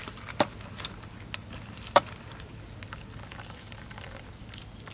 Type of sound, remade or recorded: recorded